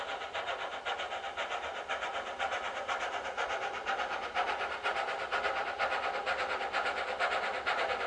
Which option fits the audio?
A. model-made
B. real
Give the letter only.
B